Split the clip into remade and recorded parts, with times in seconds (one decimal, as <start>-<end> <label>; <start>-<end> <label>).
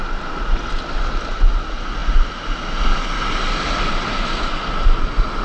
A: 0.0-5.4 recorded